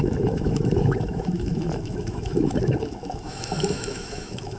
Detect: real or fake fake